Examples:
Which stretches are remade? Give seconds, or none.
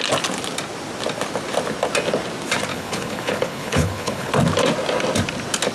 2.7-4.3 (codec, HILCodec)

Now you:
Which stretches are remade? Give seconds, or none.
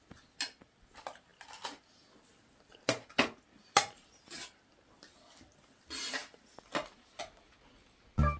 none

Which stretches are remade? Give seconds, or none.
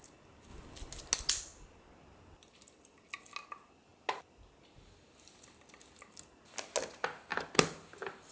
none